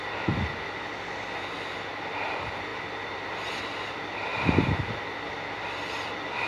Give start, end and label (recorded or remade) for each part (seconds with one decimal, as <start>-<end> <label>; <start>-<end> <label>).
0.0-6.5 recorded